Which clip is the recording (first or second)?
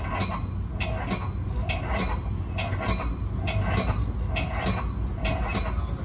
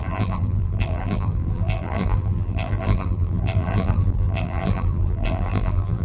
first